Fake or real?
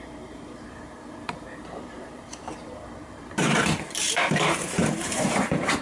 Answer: fake